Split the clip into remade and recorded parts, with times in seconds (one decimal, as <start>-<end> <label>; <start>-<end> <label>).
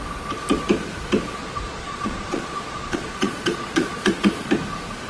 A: 0.0-1.4 recorded; 1.4-4.5 remade; 4.5-5.1 recorded